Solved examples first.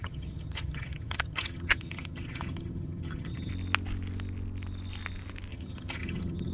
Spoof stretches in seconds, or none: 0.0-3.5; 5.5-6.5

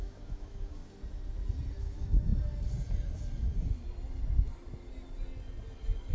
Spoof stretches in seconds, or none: 0.0-0.8; 1.8-2.3